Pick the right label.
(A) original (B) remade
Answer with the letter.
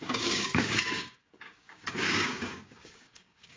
B